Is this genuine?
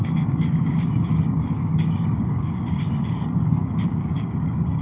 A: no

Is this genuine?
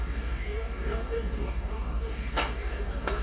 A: no